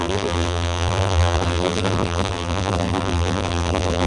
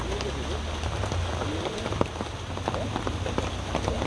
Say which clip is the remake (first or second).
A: first